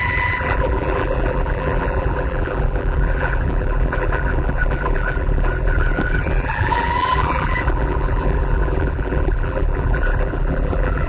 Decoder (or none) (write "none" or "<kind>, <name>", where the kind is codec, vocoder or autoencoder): vocoder, BigVGAN v2